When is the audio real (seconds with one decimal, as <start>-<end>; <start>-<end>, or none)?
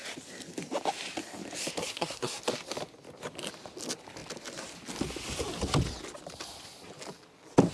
0.0-1.8; 2.4-7.7